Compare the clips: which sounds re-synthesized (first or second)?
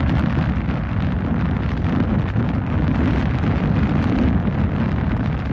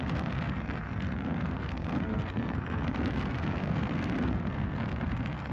second